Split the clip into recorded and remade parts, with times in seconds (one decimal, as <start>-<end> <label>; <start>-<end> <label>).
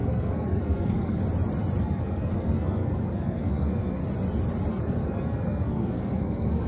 0.0-1.2 remade; 1.2-1.8 recorded; 1.8-4.0 remade; 4.0-4.7 recorded; 4.7-6.7 remade